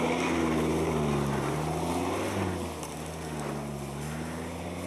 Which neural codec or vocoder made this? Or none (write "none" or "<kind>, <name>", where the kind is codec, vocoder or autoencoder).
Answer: none